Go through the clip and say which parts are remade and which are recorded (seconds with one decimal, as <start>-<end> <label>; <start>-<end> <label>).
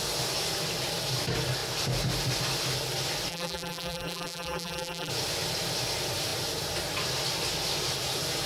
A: 0.0-3.3 recorded; 3.3-5.1 remade; 5.1-8.5 recorded